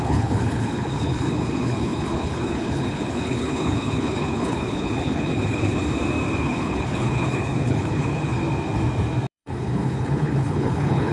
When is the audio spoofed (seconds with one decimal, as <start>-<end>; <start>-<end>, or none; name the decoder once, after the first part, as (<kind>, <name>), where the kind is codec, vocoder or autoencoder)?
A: 0.0-5.8 (codec, HILCodec); 6.4-8.4; 9.3-11.1